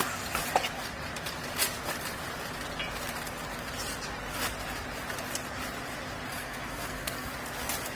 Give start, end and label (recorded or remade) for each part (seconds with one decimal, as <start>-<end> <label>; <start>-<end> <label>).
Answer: 0.0-6.3 recorded; 6.3-7.3 remade; 7.3-8.0 recorded